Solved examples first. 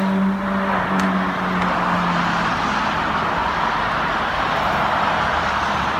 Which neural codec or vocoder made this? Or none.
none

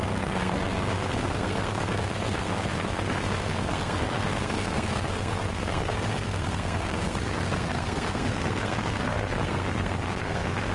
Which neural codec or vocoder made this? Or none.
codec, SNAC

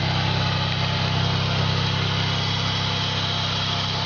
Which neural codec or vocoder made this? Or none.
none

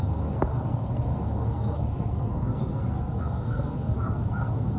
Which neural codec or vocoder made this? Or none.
codec, SNAC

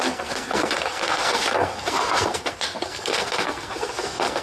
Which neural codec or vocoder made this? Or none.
codec, SNAC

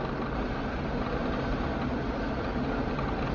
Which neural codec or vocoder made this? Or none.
none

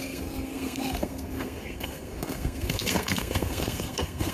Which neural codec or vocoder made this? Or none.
codec, SNAC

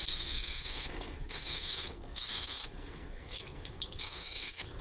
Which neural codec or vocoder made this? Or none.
codec, SNAC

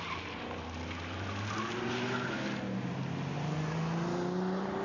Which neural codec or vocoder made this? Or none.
none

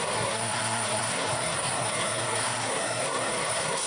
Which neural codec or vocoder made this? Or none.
codec, SNAC